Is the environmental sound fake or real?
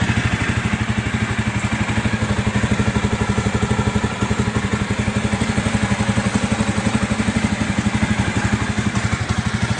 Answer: real